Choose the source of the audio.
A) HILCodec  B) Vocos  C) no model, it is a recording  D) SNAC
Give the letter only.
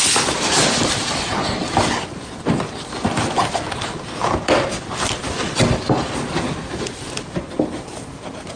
C